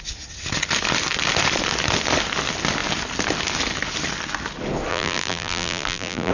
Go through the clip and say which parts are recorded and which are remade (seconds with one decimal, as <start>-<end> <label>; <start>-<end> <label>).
0.0-4.9 recorded; 4.9-6.3 remade

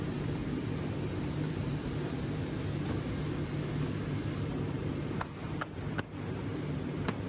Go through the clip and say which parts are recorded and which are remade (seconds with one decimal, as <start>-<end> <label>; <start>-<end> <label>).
0.0-0.4 remade; 0.4-0.9 recorded; 0.9-2.4 remade; 2.4-4.5 recorded; 4.5-7.3 remade

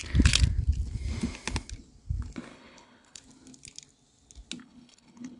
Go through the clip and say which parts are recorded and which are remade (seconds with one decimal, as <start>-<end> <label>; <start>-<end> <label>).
0.0-2.5 recorded; 2.5-3.2 remade; 3.2-4.6 recorded; 4.6-5.4 remade

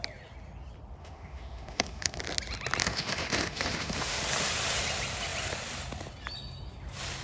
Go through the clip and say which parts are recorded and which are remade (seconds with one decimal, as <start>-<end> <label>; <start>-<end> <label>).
0.0-1.0 recorded; 1.0-2.2 remade; 2.2-2.8 recorded; 2.8-4.2 remade; 4.2-7.2 recorded

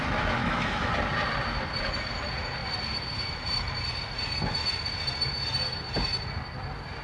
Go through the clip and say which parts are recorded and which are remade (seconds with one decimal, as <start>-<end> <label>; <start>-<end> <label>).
0.0-0.4 recorded; 0.4-0.9 remade; 0.9-7.0 recorded